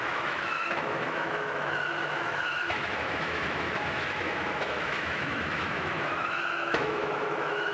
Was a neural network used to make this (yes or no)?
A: yes